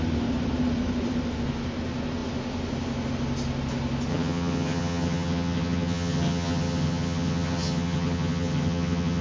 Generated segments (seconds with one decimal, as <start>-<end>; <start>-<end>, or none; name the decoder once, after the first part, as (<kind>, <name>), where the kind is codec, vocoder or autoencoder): 4.1-9.2 (vocoder, HiFi-GAN)